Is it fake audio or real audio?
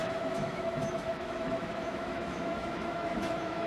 fake